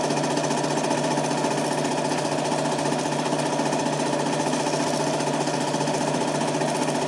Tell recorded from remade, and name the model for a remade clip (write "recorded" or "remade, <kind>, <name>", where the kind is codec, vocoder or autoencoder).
recorded